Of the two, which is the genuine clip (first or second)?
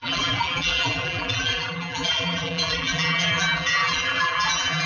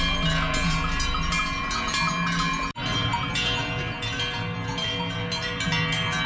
second